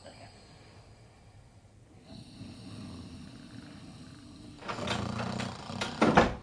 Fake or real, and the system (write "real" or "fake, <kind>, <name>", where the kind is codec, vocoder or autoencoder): real